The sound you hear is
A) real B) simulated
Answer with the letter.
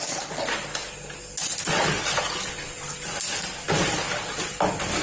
A